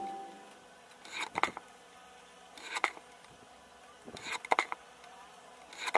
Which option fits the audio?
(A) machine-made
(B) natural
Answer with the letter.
B